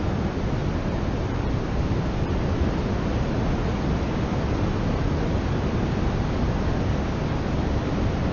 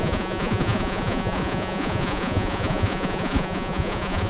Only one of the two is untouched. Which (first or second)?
first